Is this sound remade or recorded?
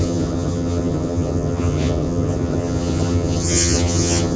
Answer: remade